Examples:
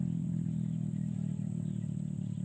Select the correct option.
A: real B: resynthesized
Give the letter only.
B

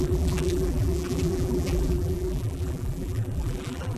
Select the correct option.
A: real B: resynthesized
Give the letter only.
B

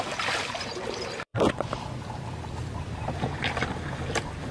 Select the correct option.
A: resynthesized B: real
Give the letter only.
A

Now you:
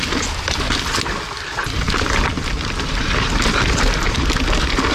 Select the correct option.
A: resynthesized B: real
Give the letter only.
B